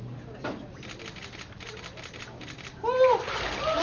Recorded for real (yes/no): yes